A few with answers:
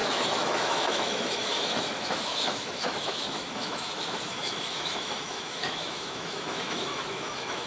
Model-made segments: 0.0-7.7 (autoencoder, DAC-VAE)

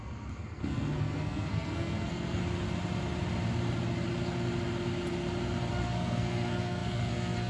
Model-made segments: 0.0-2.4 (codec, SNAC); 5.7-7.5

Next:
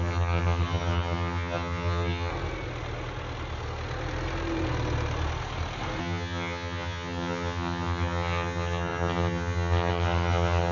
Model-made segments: 0.0-2.3 (vocoder, HiFi-GAN); 6.0-10.7

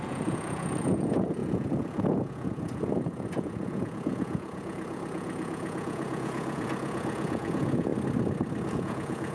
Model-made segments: 0.0-7.9 (vocoder, Vocos); 8.7-9.3

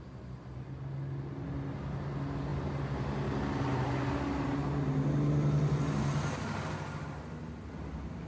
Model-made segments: none

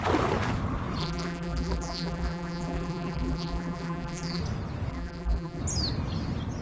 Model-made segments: 1.0-4.4 (vocoder, BigVGAN v2); 4.9-5.6

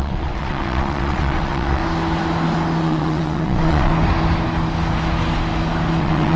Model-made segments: 0.0-1.8 (vocoder, WaveNeXt); 2.8-3.9; 6.0-6.4